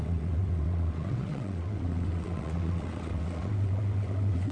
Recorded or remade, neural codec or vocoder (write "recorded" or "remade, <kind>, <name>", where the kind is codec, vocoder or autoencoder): remade, vocoder, WaveNeXt